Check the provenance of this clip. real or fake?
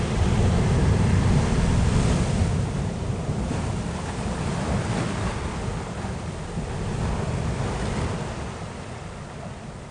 real